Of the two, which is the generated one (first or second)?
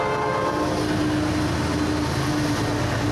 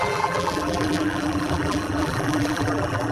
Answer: second